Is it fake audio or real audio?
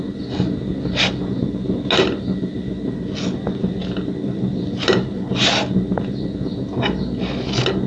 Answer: real